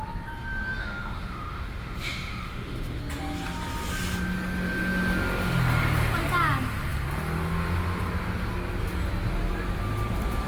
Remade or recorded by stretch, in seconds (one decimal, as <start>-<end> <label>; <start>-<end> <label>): 0.0-0.8 recorded; 0.8-3.0 remade; 3.0-10.5 recorded